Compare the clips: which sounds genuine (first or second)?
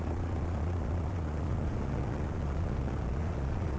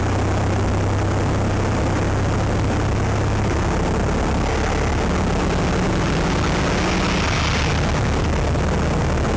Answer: second